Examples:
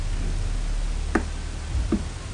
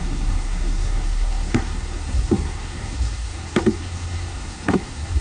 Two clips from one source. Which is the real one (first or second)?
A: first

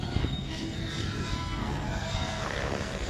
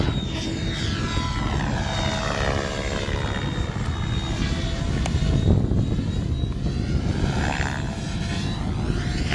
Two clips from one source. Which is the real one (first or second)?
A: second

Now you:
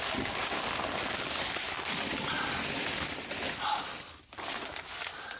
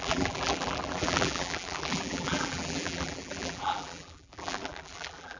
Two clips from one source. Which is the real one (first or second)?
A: first